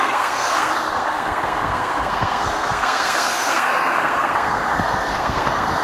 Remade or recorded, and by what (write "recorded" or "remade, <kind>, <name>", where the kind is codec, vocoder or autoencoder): remade, codec, SNAC